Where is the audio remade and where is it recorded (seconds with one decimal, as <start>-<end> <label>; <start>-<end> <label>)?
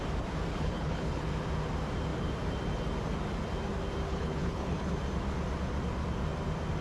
0.0-0.5 recorded; 0.5-1.2 remade; 1.2-4.1 recorded; 4.1-4.9 remade; 4.9-6.8 recorded